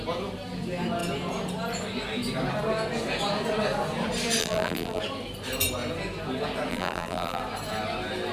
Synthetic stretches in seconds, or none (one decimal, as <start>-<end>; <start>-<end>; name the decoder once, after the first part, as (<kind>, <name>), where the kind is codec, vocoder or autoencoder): 4.4-5.0 (vocoder, BigVGAN v2); 6.7-7.4